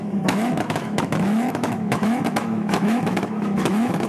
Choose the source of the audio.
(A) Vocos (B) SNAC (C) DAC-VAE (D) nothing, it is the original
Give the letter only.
C